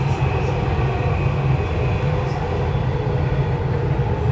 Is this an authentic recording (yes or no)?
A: yes